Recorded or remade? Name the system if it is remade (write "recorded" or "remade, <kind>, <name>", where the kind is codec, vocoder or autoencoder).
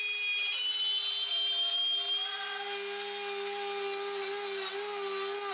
recorded